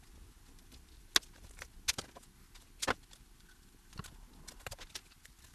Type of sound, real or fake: real